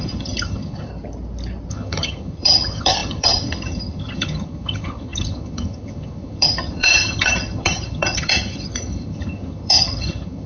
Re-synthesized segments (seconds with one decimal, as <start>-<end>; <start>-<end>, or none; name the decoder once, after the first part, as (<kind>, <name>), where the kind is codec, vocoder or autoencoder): 0.0-0.9 (vocoder, HiFi-GAN); 1.7-10.5